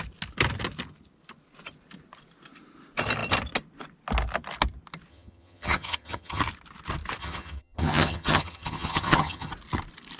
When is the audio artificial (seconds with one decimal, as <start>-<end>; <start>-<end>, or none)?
5.1-6.4; 7.2-9.5